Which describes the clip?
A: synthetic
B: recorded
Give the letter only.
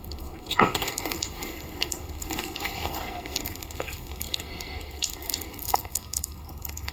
A